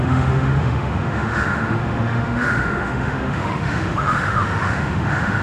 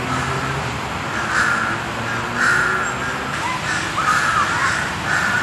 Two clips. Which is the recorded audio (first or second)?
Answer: second